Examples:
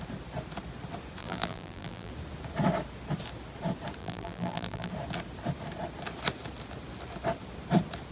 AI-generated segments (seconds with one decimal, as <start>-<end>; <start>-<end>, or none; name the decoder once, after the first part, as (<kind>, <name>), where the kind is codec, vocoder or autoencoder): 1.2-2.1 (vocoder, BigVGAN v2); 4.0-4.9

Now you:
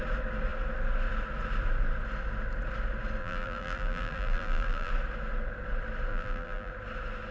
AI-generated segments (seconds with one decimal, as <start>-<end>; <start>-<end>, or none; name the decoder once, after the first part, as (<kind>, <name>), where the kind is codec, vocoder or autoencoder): 3.2-4.9 (vocoder, BigVGAN v2); 6.1-6.7

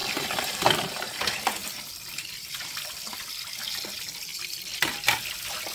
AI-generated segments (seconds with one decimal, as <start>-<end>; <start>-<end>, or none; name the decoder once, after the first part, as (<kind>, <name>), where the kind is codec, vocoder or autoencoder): 0.0-0.7 (vocoder, BigVGAN v2); 1.6-2.5; 4.3-5.1

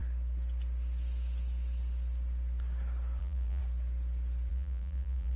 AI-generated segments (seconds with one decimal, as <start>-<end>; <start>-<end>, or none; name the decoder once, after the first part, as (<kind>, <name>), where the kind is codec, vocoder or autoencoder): 3.2-3.6 (vocoder, BigVGAN v2); 4.5-5.4